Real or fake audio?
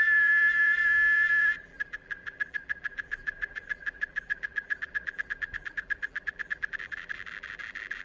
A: fake